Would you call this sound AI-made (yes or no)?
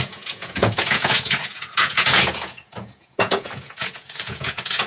yes